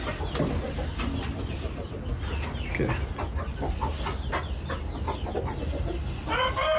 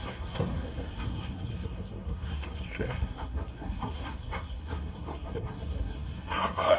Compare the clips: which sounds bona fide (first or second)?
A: first